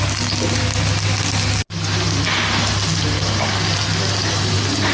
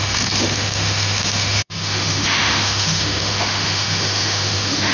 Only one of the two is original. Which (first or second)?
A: first